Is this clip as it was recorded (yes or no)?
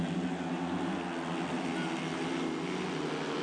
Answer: yes